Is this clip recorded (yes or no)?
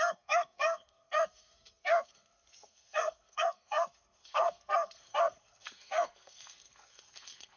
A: no